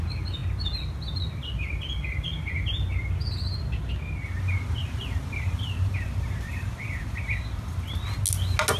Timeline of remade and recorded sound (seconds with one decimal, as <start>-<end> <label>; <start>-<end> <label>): 0.0-4.8 recorded; 4.8-8.2 remade; 8.2-8.8 recorded